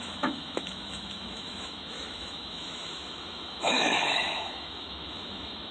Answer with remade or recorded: remade